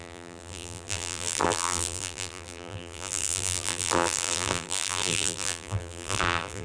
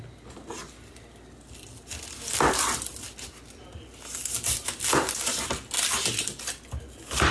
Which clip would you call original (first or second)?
second